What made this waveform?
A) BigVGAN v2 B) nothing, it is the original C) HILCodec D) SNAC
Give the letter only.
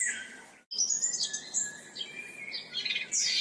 B